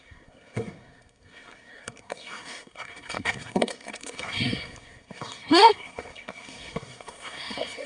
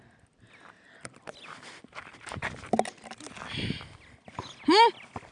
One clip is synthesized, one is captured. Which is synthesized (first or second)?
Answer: first